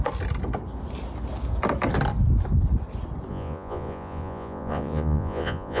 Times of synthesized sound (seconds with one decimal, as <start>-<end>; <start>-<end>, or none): 3.3-5.8